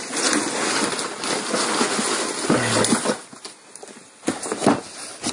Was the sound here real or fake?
real